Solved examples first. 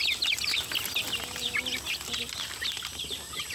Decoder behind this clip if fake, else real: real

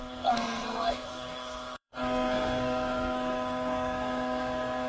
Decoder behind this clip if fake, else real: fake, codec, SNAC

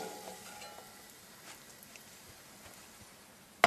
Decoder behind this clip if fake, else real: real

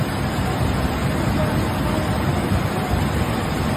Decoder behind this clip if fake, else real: real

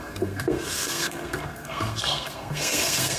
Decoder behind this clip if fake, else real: fake, codec, SNAC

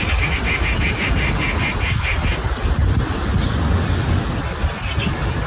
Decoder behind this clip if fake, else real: real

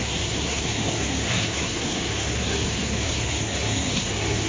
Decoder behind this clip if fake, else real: fake, codec, SNAC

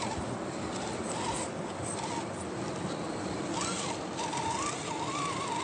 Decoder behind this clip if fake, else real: real